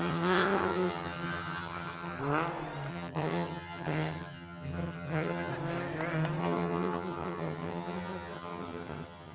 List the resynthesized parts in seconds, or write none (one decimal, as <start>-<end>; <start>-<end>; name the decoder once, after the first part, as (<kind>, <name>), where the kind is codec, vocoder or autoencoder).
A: 0.0-2.2 (vocoder, HiFi-GAN); 2.9-5.5; 6.4-9.3